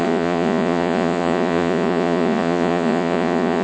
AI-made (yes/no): yes